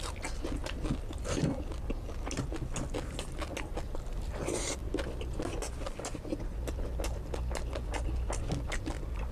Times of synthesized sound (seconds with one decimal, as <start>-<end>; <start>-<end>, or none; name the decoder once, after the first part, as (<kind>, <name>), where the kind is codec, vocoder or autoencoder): none